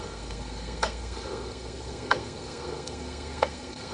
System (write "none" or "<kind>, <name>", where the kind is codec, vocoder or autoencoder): codec, SNAC